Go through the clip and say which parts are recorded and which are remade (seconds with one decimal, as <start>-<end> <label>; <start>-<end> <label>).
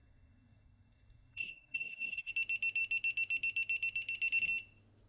0.0-2.3 remade; 2.3-5.1 recorded